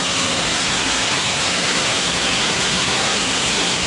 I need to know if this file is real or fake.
fake